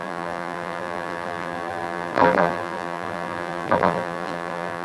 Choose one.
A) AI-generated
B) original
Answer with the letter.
A